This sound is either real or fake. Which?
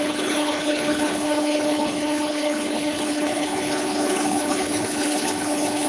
fake